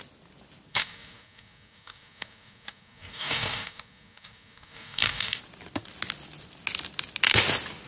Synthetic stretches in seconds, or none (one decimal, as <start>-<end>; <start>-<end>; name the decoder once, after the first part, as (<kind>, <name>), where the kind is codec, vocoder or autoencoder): 0.7-5.4 (codec, DAC)

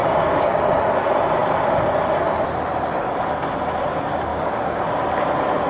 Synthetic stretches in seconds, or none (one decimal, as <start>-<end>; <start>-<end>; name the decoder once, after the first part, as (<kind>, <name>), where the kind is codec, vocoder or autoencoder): 0.0-0.6 (codec, DAC); 4.3-5.0

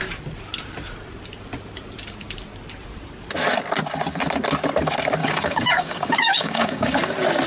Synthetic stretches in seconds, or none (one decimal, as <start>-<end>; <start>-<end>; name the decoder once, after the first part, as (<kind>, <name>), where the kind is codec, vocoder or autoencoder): 5.2-7.0 (codec, DAC)